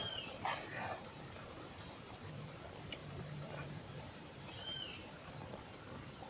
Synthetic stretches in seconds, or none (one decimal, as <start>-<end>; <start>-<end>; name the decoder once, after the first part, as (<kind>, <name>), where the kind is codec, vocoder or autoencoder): 0.0-2.3 (vocoder, BigVGAN v2); 3.0-5.3